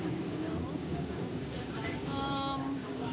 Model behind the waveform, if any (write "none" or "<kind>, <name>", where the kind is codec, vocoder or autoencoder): codec, DAC